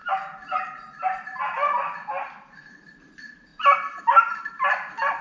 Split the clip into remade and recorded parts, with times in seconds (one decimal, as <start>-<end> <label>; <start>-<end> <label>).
0.0-3.1 recorded; 3.1-3.5 remade; 3.5-4.0 recorded; 4.0-5.2 remade